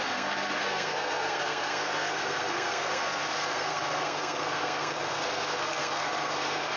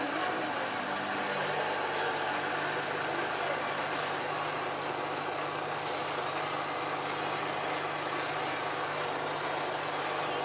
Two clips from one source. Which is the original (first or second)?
second